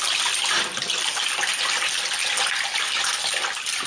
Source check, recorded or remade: recorded